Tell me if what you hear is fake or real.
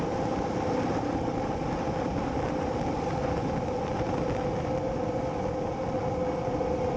real